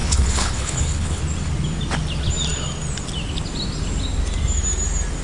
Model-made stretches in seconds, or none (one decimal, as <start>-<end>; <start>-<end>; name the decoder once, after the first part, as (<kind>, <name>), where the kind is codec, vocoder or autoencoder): 0.0-1.2 (codec, HILCodec)